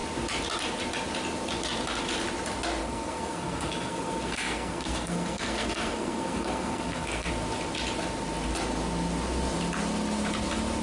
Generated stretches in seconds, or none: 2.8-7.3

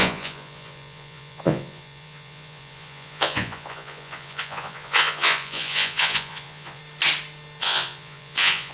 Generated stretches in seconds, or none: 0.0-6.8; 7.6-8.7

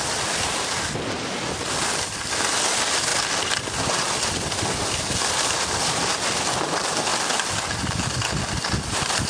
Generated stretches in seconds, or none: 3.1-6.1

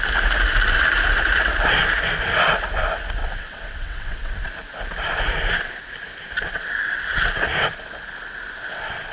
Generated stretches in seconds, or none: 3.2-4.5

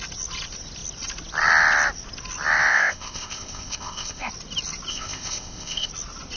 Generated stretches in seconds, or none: 2.7-4.3; 4.9-5.9

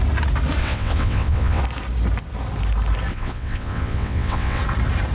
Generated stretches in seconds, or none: 0.6-1.6; 3.1-4.6

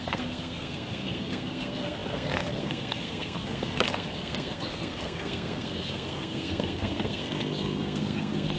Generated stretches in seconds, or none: 0.0-8.6

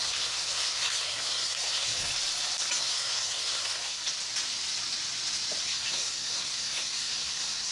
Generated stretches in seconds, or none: 0.0-2.1; 2.8-4.0; 5.6-7.7